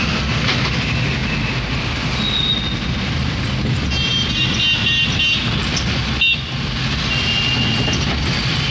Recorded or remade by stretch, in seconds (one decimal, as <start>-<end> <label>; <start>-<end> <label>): 0.0-8.7 recorded